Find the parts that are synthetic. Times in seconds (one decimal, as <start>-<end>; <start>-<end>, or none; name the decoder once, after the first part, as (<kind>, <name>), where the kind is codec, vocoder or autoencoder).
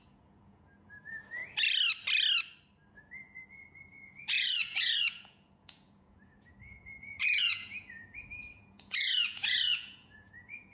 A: 0.0-1.4 (vocoder, Vocos); 2.9-10.7